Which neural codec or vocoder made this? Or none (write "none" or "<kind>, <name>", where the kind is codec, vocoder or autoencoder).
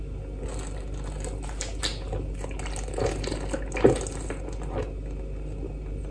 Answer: none